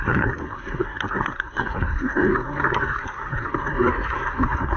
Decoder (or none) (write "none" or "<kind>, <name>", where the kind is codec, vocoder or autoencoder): codec, SNAC